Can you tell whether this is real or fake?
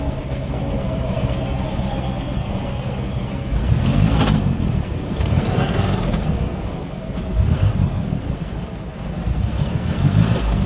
fake